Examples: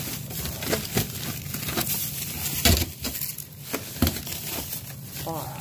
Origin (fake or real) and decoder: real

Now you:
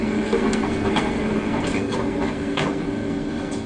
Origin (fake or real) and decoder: fake, codec, SNAC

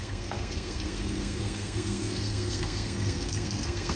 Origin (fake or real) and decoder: fake, codec, SNAC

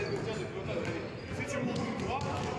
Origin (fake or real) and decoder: real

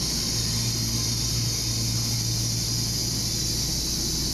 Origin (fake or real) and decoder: real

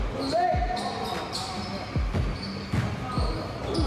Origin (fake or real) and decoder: real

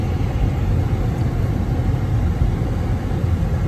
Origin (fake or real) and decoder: real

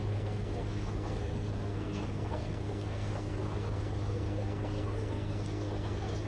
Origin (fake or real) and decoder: fake, codec, SNAC